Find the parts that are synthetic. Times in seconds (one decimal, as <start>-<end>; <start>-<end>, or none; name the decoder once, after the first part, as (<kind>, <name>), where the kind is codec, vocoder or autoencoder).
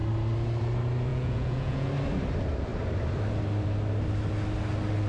1.1-1.9 (vocoder, Vocos)